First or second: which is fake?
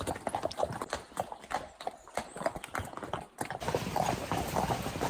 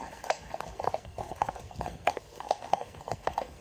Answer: second